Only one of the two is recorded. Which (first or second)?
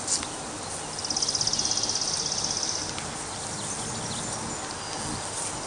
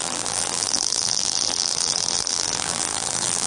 first